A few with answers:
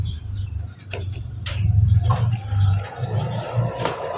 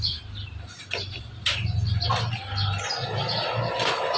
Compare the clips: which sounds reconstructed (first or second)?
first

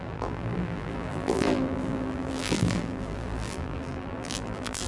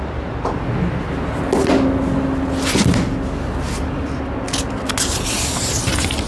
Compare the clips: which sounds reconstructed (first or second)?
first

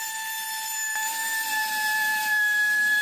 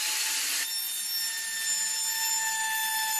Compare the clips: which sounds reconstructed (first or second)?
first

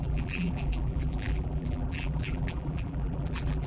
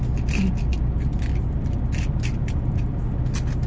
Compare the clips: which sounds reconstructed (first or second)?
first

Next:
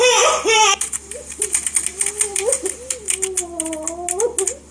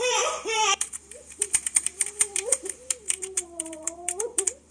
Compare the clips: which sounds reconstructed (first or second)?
second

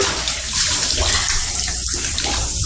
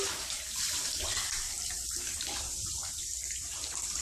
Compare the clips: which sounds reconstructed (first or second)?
second